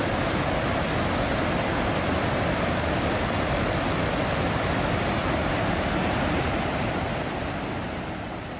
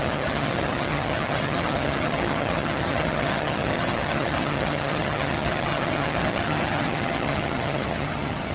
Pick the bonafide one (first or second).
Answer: first